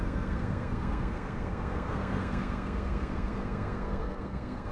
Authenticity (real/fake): fake